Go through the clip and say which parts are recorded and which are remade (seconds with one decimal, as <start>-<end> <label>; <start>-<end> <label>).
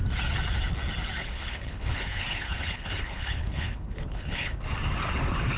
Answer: 0.0-1.2 recorded; 1.2-4.6 remade; 4.6-5.6 recorded